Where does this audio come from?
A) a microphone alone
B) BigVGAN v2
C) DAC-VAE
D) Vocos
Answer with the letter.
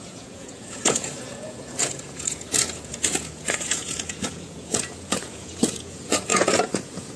D